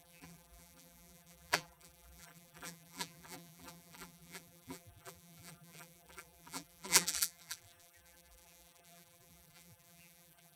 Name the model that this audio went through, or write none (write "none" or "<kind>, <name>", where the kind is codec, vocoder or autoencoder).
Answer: vocoder, BigVGAN v2